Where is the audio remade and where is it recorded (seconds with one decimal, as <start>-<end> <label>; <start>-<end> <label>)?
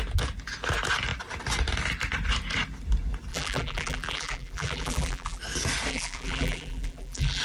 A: 0.0-3.3 recorded; 3.3-5.4 remade; 5.4-5.9 recorded; 5.9-7.4 remade